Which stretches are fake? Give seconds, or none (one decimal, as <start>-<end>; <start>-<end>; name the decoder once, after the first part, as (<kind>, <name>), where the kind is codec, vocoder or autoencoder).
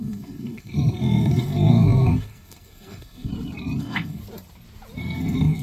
0.0-3.3 (codec, SNAC); 3.8-4.2; 5.0-5.6